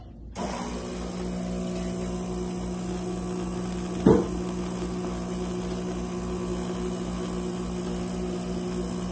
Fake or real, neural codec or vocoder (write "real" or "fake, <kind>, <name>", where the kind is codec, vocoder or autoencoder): real